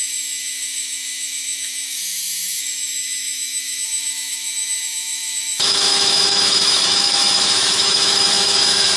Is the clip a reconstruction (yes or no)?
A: yes